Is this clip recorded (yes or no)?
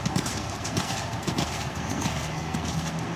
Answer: no